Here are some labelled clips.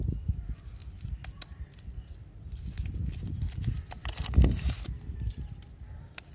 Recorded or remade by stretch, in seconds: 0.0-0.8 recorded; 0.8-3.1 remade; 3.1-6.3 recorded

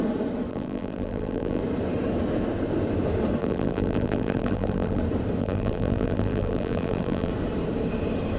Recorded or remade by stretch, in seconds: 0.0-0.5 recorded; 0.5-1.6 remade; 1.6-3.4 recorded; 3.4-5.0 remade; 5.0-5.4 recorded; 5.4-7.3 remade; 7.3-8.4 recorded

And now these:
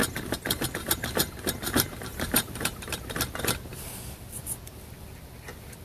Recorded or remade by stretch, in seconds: 0.0-0.7 remade; 0.7-2.1 recorded; 2.1-2.8 remade; 2.8-5.8 recorded

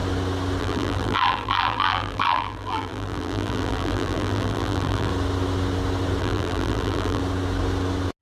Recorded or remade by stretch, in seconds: 0.0-0.6 recorded; 0.6-5.1 remade; 5.1-6.2 recorded; 6.2-7.2 remade; 7.2-8.2 recorded

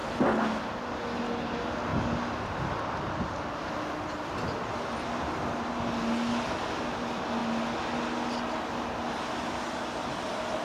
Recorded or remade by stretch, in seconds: 0.0-10.6 recorded

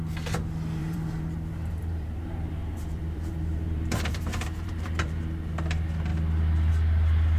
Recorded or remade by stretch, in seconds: 0.0-0.8 recorded; 0.8-5.2 remade; 5.2-7.4 recorded

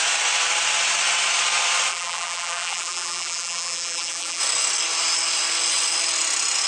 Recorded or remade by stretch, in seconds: 0.0-1.9 recorded; 1.9-4.4 remade; 4.4-6.7 recorded

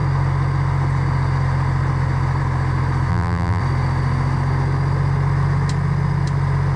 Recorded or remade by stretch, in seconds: 0.0-3.1 recorded; 3.1-3.6 remade; 3.6-6.8 recorded